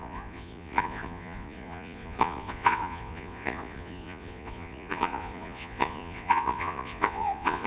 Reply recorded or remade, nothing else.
remade